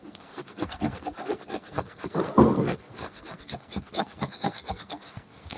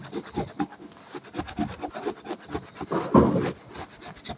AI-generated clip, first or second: first